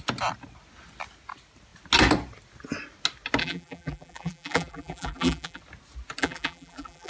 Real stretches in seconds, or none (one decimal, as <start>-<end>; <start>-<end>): 0.0-3.4; 5.6-6.2